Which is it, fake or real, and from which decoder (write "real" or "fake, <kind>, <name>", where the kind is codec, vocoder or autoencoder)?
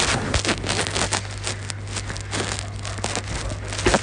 real